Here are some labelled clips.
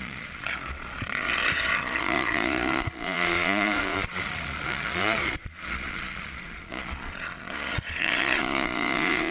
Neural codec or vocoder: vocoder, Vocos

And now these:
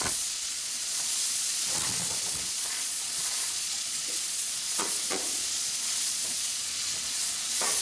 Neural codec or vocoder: vocoder, Vocos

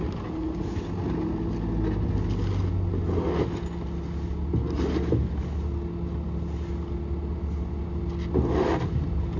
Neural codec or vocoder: none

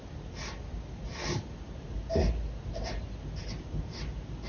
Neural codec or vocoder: none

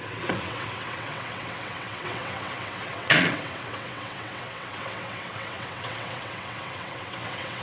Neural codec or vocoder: vocoder, WaveNeXt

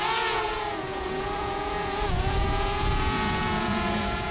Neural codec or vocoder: vocoder, Vocos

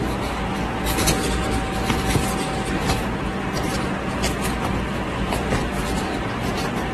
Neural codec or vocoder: none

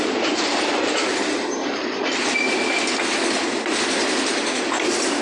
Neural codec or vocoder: none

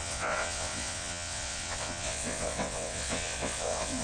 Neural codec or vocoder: vocoder, WaveNeXt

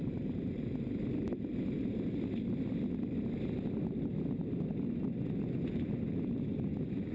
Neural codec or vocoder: none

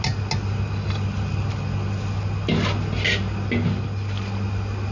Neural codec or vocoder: none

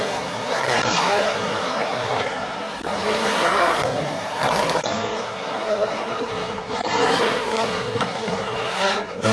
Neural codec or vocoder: codec, SNAC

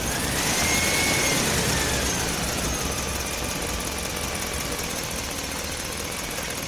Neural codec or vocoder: none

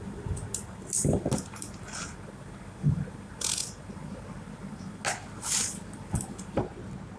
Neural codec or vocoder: none